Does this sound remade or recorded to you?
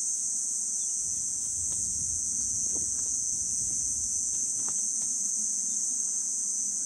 remade